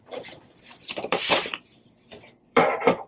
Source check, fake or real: fake